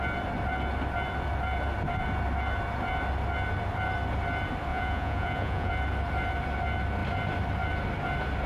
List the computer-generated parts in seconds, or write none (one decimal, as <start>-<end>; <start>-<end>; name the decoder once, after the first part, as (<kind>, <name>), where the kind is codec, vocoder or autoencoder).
4.7-5.7 (vocoder, Vocos)